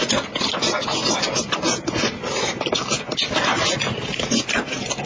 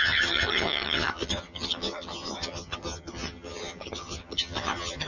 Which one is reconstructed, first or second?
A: second